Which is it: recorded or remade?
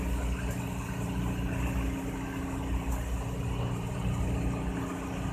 recorded